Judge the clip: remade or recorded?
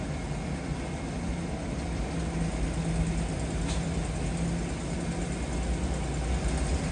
recorded